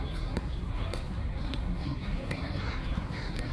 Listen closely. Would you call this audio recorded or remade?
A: remade